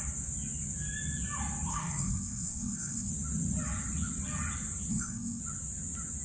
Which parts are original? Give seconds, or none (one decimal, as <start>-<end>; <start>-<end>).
0.0-1.7; 3.1-4.9; 5.4-6.2

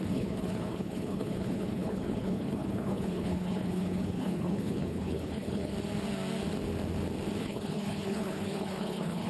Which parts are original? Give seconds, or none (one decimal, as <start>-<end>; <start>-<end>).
5.7-7.4

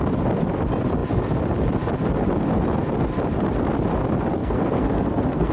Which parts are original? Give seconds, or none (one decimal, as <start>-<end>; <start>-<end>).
0.0-4.4

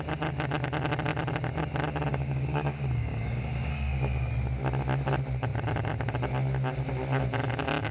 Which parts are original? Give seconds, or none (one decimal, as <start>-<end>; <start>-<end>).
0.0-2.1; 4.3-7.9

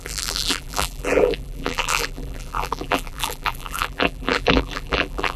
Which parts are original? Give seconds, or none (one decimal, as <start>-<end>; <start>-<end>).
none

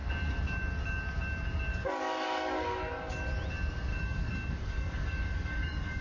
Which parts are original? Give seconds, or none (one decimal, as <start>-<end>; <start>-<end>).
0.0-1.7; 3.1-3.9

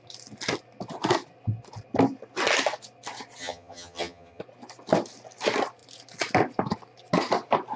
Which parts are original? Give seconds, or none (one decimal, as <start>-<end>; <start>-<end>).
0.0-3.4; 4.4-7.8

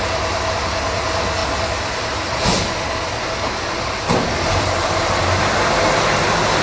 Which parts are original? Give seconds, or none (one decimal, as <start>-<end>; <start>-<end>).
0.0-6.6